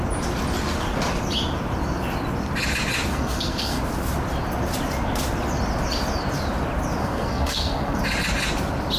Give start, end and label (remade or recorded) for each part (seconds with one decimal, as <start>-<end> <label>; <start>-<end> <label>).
0.0-3.1 recorded; 3.1-3.8 remade; 3.8-7.0 recorded; 7.0-8.0 remade; 8.0-9.0 recorded